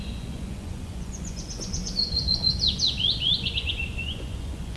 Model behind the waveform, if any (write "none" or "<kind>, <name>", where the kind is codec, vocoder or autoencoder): vocoder, Vocos